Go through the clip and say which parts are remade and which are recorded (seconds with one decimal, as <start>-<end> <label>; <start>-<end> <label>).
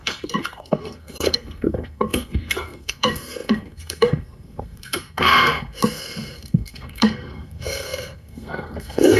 0.0-9.2 remade